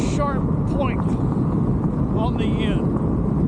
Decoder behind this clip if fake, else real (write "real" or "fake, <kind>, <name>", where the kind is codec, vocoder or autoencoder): real